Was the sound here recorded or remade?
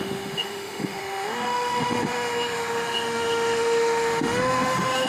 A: remade